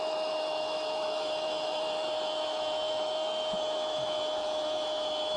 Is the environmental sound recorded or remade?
remade